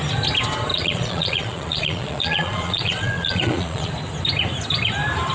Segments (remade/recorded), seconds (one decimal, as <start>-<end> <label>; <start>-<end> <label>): 0.0-0.7 recorded; 0.7-3.9 remade; 3.9-5.3 recorded